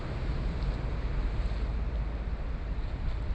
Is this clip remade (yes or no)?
no